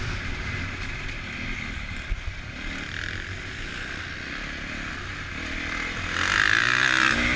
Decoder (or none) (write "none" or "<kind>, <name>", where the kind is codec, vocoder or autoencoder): none